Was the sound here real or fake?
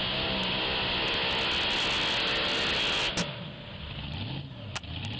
real